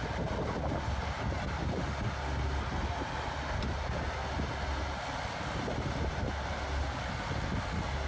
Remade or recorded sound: recorded